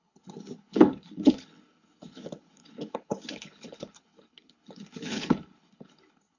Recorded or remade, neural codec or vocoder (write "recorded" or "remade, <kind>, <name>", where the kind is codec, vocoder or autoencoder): remade, codec, HILCodec